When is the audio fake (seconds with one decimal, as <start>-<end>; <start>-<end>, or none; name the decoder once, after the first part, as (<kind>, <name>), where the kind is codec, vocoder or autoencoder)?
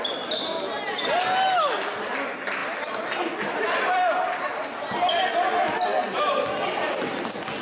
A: none